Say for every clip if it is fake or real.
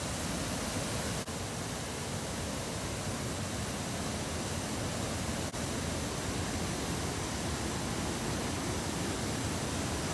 real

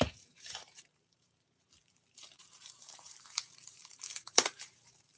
fake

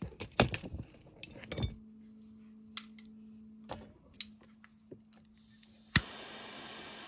real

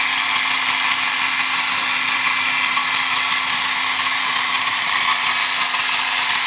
real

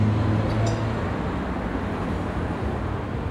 real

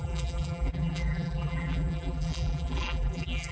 fake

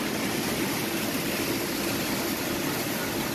real